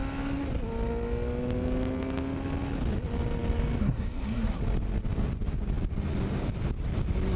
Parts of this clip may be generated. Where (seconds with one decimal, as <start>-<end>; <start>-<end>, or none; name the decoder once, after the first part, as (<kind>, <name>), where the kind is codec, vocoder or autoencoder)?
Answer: 3.8-4.6 (codec, SNAC)